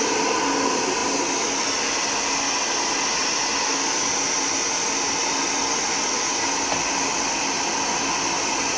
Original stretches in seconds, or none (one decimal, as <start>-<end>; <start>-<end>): 0.0-8.8